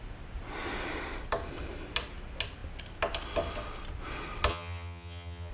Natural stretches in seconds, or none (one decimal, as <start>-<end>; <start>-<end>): 0.0-4.5